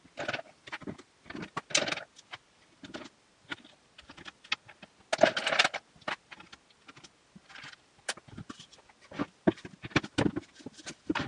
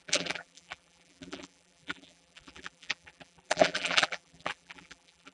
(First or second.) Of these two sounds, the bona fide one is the first